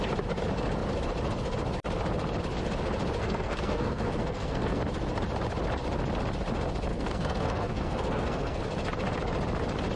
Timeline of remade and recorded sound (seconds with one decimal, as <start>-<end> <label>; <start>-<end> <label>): 0.0-3.2 recorded; 3.2-4.8 remade; 4.8-6.9 recorded; 6.9-8.6 remade; 8.6-10.0 recorded